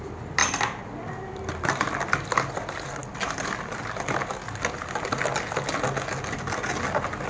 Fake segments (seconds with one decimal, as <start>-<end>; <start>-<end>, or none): none

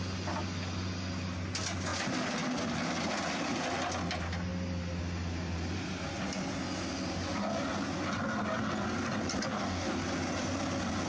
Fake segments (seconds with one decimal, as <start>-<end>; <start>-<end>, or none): 9.5-10.0

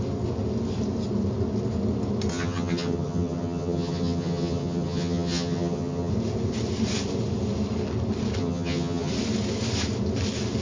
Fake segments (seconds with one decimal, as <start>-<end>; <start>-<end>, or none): 2.3-6.1; 8.4-9.1

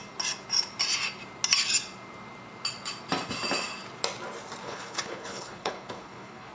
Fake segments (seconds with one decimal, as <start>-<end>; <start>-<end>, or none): 4.6-6.5